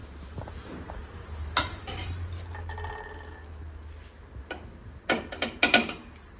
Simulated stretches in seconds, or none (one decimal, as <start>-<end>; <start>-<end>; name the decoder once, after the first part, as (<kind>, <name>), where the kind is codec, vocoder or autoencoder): none

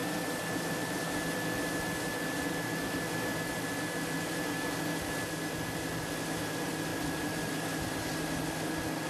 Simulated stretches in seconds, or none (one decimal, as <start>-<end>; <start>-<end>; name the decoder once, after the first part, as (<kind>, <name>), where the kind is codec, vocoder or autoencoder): 6.9-7.5 (vocoder, BigVGAN v2)

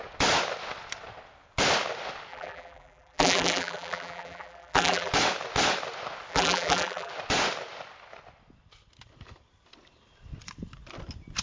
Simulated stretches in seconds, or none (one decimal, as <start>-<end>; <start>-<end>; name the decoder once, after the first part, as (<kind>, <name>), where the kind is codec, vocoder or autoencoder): 2.3-5.1 (vocoder, BigVGAN v2); 6.3-7.1

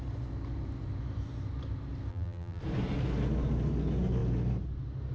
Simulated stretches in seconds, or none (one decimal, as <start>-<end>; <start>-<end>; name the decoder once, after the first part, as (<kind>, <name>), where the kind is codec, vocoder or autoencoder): 2.1-2.6 (vocoder, BigVGAN v2)